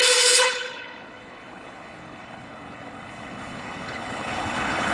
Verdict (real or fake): fake